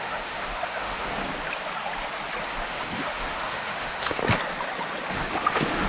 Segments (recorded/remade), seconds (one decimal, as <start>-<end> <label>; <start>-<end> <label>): 0.0-1.2 remade; 1.2-2.4 recorded; 2.4-4.2 remade; 4.2-5.1 recorded; 5.1-5.9 remade